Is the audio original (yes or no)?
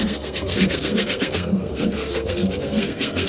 no